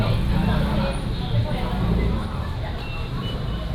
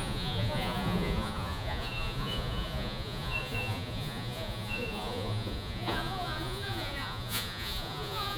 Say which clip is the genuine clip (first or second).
first